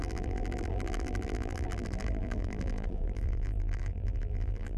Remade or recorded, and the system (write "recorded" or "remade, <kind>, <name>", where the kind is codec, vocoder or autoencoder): remade, vocoder, BigVGAN v2